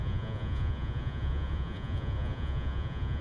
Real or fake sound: fake